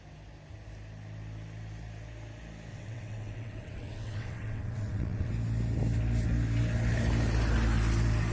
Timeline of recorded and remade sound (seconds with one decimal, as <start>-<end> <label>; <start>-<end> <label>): 0.0-2.7 recorded; 2.7-5.3 remade; 5.3-8.3 recorded